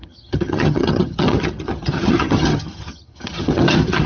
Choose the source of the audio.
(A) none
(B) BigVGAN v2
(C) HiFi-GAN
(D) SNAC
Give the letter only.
C